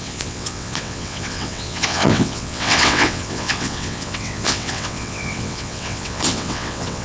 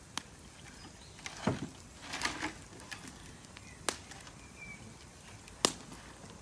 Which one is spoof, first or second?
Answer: first